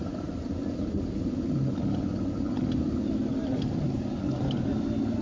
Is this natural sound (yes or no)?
yes